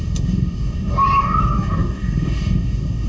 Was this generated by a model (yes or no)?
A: yes